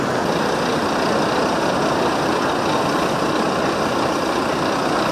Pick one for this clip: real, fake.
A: real